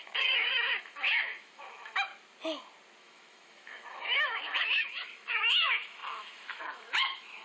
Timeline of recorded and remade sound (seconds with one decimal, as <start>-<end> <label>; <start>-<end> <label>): 0.0-2.1 remade; 2.1-3.0 recorded; 3.0-7.4 remade